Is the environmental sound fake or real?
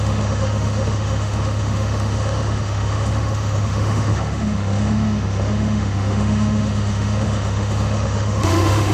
fake